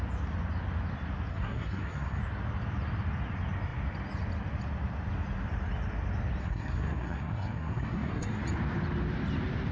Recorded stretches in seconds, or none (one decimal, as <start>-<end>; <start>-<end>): 0.0-1.3; 2.2-6.4; 8.4-9.7